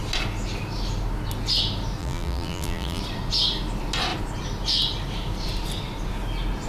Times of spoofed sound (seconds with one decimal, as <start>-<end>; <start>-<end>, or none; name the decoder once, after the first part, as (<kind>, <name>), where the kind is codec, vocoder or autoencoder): 2.0-3.0 (vocoder, BigVGAN v2)